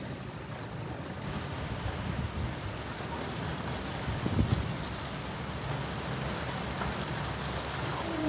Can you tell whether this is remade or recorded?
recorded